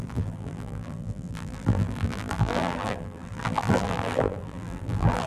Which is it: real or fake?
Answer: fake